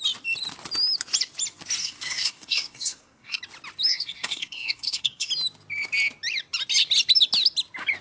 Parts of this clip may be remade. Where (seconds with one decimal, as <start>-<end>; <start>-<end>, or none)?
1.8-3.4; 3.9-5.3